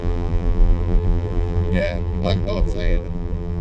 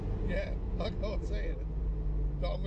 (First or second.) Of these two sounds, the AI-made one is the first